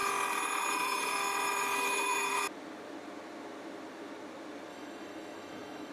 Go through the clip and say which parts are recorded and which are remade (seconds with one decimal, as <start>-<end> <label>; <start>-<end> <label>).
0.0-2.4 remade; 2.4-4.7 recorded; 4.7-5.9 remade